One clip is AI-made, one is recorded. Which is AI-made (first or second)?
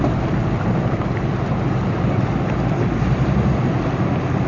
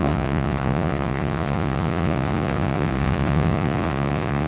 second